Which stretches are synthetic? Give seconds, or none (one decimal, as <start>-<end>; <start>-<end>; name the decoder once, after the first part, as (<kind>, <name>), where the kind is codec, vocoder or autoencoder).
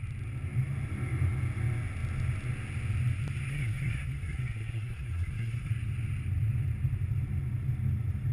3.5-5.7 (codec, SNAC)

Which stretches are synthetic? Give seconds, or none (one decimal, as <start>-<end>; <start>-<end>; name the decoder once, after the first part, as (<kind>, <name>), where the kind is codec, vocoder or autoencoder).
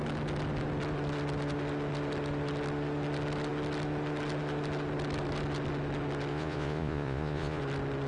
6.3-7.6 (vocoder, Vocos)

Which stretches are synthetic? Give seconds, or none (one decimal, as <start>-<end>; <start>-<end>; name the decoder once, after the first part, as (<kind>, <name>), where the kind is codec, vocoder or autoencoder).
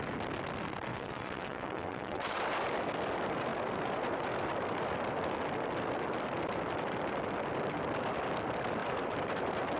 0.9-2.4 (vocoder, WaveNeXt)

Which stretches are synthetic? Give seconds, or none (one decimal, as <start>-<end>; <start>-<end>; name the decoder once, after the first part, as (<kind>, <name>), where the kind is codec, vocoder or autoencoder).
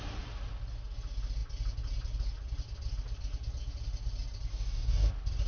4.5-5.1 (codec, DAC)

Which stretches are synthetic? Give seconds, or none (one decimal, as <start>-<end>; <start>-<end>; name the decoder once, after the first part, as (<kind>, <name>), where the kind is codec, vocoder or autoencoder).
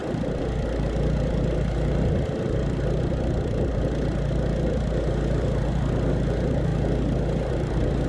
none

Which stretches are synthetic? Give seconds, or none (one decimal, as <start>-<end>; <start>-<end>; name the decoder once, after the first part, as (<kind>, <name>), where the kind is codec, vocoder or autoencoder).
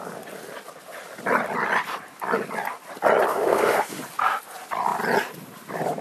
3.3-4.0 (autoencoder, DAC-VAE)